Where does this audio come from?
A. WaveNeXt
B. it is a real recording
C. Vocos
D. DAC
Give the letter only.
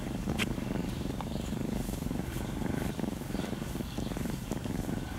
D